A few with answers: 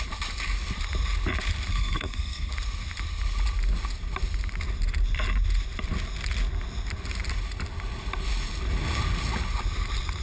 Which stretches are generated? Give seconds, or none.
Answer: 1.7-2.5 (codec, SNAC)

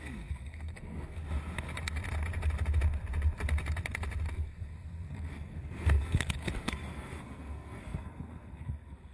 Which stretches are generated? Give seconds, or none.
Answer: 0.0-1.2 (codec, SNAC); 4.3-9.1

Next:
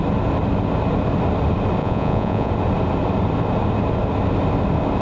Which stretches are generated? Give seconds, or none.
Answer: 1.8-2.5 (vocoder, Vocos)